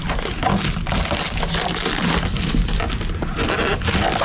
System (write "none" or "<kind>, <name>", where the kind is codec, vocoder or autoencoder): none